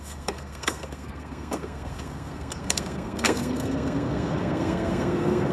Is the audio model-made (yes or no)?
yes